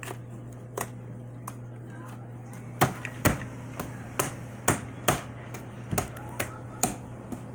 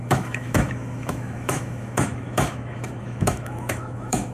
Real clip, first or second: first